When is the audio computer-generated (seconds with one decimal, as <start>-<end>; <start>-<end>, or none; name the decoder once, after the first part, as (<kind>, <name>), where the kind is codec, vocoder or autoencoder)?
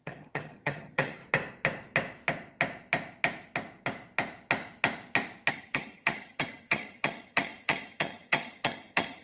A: 0.0-1.2 (vocoder, HiFi-GAN); 5.5-9.2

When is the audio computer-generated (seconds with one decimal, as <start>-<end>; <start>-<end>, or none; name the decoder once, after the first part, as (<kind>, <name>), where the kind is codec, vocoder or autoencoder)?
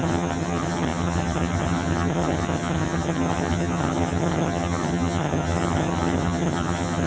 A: 0.0-7.1 (vocoder, HiFi-GAN)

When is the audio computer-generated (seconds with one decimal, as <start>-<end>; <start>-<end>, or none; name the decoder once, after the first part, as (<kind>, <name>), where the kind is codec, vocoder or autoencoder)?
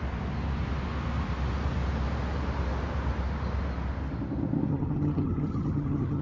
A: 4.7-6.2 (vocoder, HiFi-GAN)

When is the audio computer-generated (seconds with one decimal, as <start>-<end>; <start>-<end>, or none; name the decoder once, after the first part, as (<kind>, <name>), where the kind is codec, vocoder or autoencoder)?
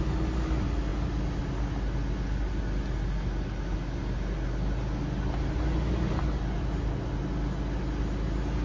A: none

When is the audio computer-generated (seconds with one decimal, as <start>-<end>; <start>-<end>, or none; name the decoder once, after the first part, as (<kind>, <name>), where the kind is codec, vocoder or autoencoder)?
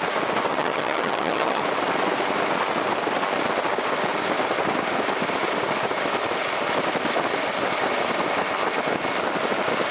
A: 0.5-1.6 (vocoder, HiFi-GAN)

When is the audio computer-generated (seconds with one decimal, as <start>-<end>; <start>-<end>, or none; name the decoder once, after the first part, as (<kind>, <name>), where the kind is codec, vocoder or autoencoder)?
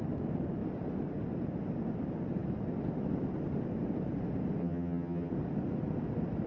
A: 4.6-5.3 (vocoder, HiFi-GAN)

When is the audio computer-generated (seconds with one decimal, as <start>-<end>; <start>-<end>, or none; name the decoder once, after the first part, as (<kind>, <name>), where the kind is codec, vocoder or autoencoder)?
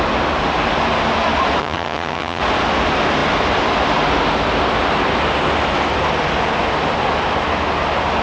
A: 1.6-2.4 (vocoder, HiFi-GAN)